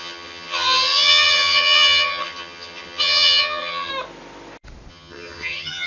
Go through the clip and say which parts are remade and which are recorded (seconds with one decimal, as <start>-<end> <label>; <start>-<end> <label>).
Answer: 0.0-3.9 remade; 3.9-4.9 recorded; 4.9-5.9 remade